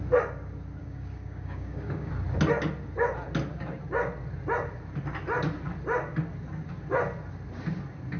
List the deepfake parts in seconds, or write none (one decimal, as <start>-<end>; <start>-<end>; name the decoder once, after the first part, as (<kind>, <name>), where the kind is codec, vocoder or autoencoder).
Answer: 0.8-2.1 (codec, DAC)